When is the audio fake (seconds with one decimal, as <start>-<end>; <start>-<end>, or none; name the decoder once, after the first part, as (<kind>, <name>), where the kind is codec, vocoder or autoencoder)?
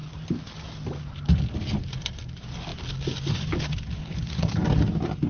4.0-4.6 (codec, HILCodec)